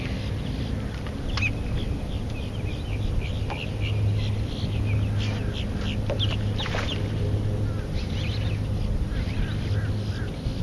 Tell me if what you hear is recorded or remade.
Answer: recorded